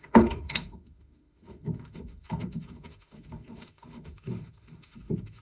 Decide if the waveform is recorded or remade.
remade